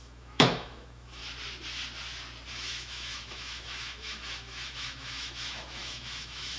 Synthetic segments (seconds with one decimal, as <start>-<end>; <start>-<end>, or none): 0.0-1.2; 2.5-6.6